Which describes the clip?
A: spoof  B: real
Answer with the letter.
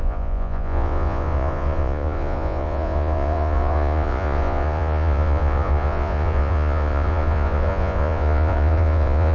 A